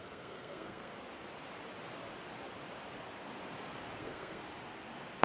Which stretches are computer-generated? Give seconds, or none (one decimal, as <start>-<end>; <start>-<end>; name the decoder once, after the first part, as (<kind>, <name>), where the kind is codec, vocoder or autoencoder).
0.0-0.9 (codec, SNAC); 4.0-4.4